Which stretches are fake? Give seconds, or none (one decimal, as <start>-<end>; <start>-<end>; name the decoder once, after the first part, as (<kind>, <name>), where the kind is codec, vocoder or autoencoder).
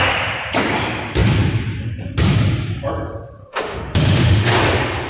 3.4-4.6 (autoencoder, DAC-VAE)